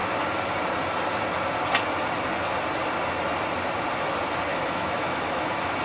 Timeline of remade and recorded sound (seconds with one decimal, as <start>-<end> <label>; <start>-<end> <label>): 0.0-4.5 recorded; 4.5-5.8 remade